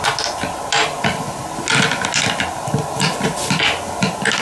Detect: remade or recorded recorded